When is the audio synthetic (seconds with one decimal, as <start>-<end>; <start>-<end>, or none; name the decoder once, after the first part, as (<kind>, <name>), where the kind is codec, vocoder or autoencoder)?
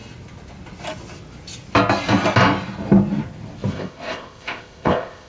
3.7-5.3 (codec, ZipCodec)